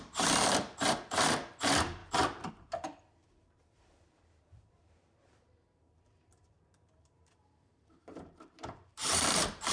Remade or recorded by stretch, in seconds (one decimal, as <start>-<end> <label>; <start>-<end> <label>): 0.0-2.0 remade; 2.0-2.5 recorded; 2.5-9.7 remade